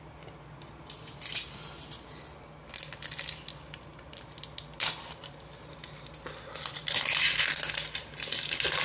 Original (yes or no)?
yes